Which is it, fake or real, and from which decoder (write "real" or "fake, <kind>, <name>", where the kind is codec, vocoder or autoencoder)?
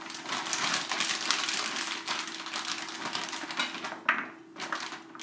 real